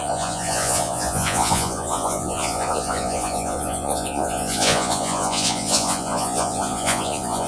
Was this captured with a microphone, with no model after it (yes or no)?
no